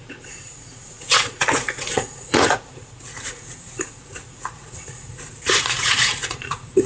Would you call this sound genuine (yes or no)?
no